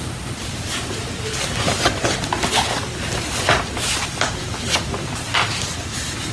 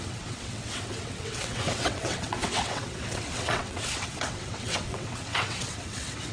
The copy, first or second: second